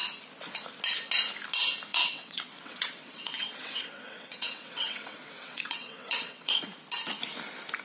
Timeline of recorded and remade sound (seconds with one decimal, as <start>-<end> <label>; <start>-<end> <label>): 0.0-1.9 recorded; 1.9-6.6 remade; 6.6-7.8 recorded